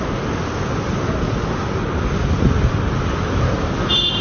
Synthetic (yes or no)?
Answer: no